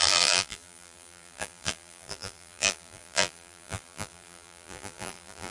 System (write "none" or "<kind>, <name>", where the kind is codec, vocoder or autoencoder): vocoder, BigVGAN v2